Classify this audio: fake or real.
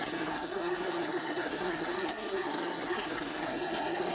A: fake